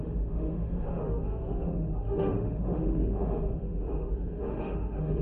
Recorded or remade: remade